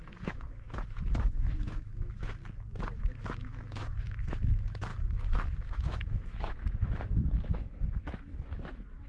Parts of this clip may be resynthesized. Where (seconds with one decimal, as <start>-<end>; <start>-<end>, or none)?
0.0-2.4; 3.0-9.1